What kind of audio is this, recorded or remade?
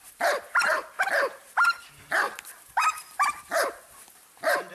remade